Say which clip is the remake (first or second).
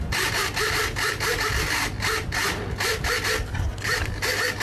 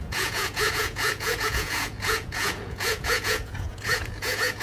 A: second